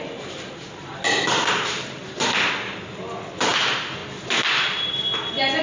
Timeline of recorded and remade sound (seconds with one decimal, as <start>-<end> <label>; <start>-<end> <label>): 0.0-2.0 remade; 2.0-3.5 recorded; 3.5-4.0 remade; 4.0-5.6 recorded